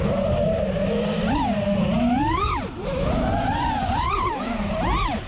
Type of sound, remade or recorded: remade